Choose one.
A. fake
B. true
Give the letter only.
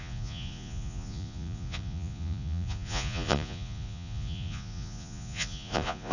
A